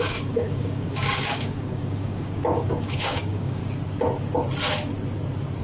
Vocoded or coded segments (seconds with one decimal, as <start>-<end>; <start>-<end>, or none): 0.0-3.6